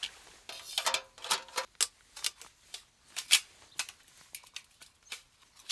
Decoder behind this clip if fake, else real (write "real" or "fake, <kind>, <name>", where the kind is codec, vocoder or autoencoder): real